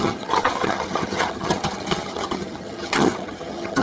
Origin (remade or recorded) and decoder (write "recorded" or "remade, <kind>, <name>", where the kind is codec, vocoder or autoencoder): remade, vocoder, HiFi-GAN